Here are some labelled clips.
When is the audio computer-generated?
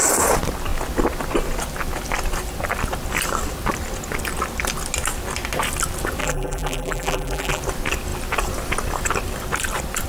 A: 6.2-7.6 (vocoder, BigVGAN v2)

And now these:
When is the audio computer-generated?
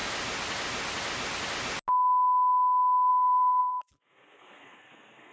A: 3.1-5.3 (codec, SNAC)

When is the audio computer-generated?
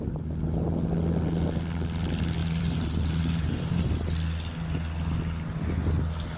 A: 2.4-3.8 (vocoder, BigVGAN v2)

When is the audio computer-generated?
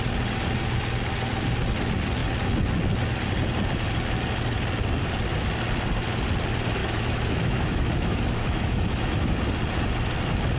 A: 6.8-9.3 (autoencoder, DAC-VAE)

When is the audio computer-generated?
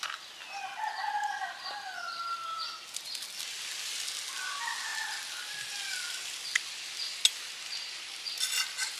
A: none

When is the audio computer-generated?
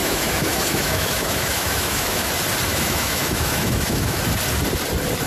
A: 0.0-2.3 (autoencoder, DAC-VAE); 2.7-4.2